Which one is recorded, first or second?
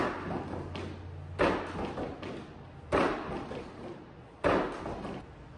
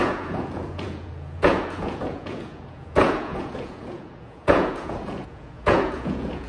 first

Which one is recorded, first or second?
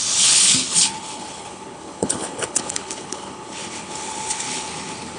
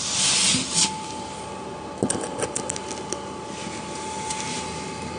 second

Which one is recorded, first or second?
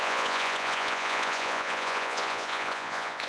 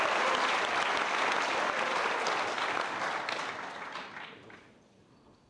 second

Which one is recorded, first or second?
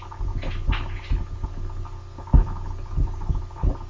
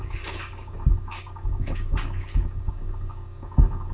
first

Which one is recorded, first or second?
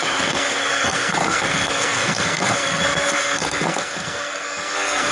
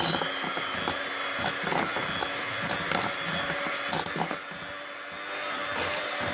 second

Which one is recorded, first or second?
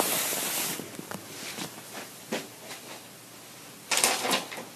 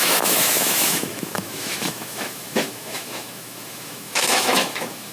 first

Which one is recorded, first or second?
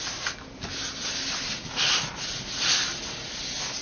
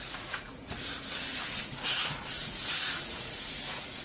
first